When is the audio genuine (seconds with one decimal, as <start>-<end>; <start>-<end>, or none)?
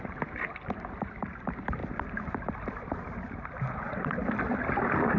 0.0-5.2